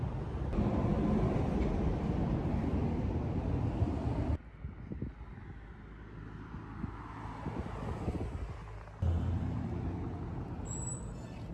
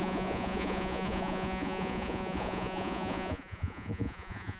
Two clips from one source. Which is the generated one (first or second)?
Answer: second